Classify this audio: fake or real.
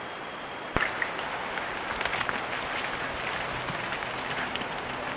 real